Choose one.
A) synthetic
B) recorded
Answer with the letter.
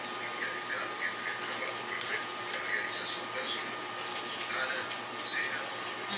B